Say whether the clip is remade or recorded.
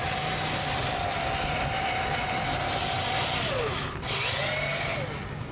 recorded